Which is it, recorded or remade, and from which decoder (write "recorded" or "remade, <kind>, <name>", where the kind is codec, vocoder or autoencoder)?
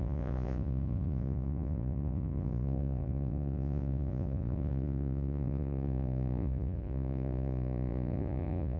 remade, vocoder, Vocos